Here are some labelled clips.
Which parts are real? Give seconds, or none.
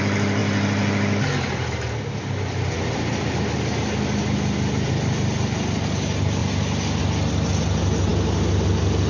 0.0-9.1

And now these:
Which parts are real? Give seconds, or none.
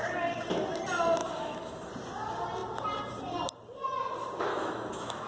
0.0-1.2; 1.9-4.5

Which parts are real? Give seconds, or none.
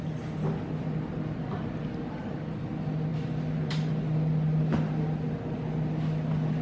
0.0-6.6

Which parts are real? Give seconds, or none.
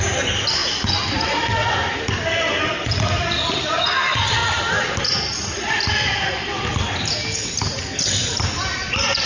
0.0-0.6; 3.7-4.4; 5.0-8.2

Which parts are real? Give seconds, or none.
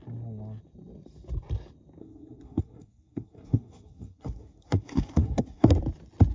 0.0-2.0; 5.8-6.3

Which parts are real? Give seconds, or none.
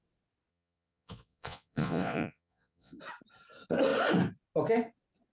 0.0-0.5; 3.0-5.3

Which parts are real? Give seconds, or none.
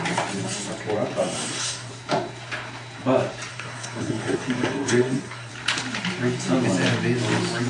0.0-1.2; 1.9-3.5; 5.5-7.7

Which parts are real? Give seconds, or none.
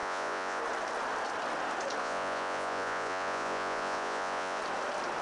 0.6-2.0; 4.6-5.2